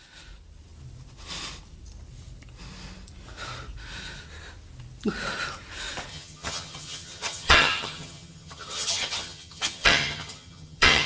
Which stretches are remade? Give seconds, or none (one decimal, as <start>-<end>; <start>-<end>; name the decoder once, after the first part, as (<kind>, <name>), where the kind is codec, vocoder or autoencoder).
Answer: 6.1-11.1 (vocoder, HiFi-GAN)

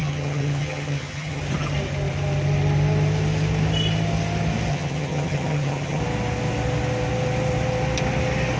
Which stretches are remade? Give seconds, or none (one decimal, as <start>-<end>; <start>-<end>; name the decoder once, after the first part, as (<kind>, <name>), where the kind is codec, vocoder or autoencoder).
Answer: 0.0-1.4 (vocoder, HiFi-GAN); 4.7-6.0

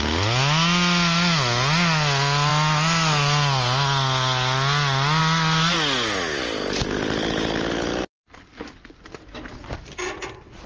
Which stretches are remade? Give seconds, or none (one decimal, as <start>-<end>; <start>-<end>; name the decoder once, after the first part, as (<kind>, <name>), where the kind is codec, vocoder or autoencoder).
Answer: none